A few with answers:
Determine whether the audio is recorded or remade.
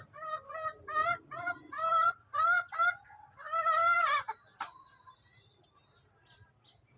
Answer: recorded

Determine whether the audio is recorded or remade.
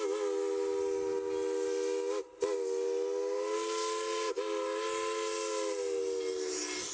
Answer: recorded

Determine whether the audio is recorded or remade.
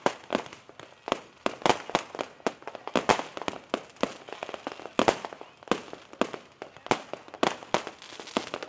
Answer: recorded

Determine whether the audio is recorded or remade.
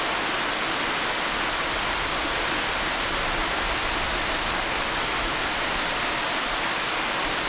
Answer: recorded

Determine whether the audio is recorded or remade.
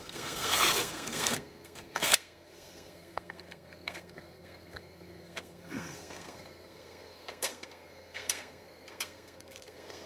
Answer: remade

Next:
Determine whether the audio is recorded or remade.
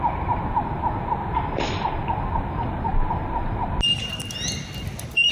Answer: recorded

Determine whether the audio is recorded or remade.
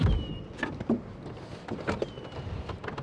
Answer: recorded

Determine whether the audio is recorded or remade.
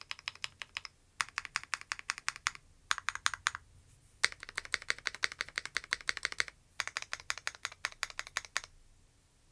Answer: recorded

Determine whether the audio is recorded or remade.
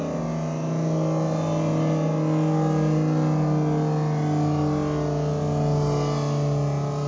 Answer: recorded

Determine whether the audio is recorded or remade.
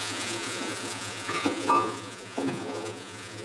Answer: remade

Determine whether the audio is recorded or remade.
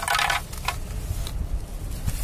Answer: recorded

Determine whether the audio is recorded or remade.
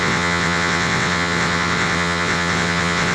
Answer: remade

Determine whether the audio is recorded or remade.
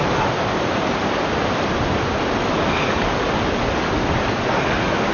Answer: recorded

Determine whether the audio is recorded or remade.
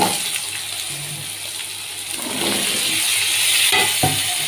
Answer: recorded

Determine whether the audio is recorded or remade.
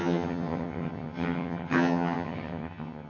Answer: remade